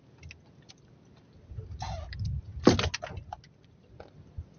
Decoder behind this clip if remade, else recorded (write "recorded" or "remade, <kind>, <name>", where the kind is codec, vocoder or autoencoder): recorded